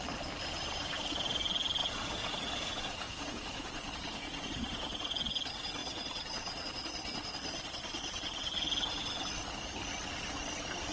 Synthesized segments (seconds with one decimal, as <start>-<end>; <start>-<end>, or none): 1.8-5.1